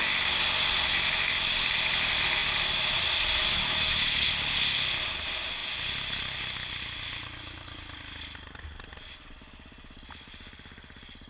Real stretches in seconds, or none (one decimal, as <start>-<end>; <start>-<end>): 0.0-3.4; 4.3-11.3